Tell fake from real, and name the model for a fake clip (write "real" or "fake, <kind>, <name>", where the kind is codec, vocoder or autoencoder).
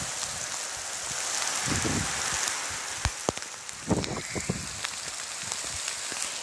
real